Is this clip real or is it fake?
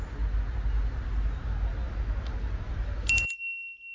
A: real